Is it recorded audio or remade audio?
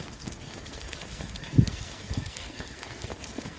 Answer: remade